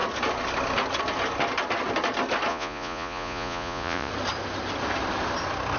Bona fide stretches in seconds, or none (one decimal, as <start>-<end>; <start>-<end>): 0.0-2.5; 4.1-5.8